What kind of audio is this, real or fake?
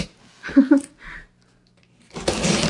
real